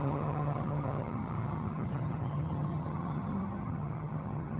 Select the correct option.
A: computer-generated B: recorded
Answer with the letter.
A